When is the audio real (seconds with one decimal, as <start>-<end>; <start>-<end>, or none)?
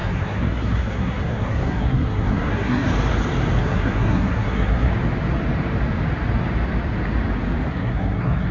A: 2.9-3.6; 4.9-7.7